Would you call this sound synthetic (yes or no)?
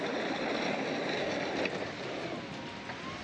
no